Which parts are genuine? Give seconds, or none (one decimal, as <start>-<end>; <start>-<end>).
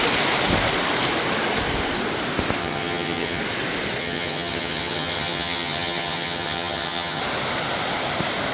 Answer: 0.0-2.6; 3.4-4.0; 7.2-8.5